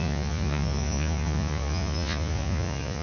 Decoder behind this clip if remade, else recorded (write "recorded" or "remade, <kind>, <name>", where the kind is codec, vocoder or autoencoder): remade, vocoder, Vocos